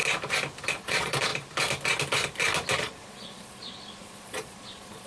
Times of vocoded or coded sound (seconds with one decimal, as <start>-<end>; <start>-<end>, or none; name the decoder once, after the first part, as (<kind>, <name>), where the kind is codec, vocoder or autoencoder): 0.7-1.3 (vocoder, Vocos); 2.8-5.1